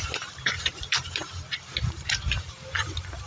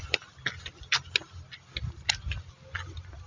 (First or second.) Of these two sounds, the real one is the second